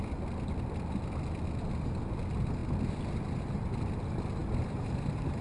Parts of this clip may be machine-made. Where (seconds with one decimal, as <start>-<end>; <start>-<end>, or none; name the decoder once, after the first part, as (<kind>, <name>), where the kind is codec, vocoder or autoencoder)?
4.4-5.4 (vocoder, BigVGAN v2)